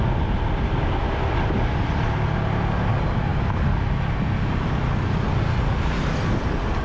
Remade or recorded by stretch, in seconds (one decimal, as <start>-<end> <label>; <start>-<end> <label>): 0.0-6.8 recorded